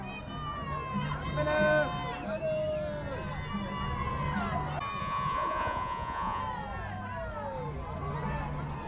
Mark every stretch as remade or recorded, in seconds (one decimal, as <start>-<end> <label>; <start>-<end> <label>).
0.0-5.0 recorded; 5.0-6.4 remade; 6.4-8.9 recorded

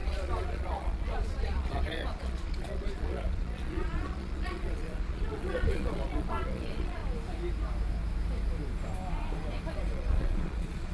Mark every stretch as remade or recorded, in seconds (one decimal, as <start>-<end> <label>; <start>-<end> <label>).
0.0-7.0 remade; 7.0-9.7 recorded; 9.7-10.9 remade

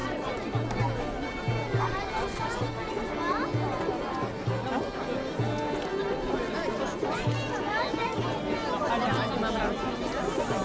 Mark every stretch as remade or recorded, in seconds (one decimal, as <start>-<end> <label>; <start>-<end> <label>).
0.0-10.6 recorded